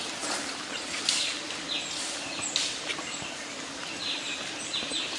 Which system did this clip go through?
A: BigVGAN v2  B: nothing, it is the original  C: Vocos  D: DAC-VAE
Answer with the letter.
B